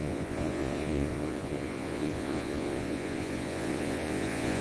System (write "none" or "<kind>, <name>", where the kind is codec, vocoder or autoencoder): vocoder, Vocos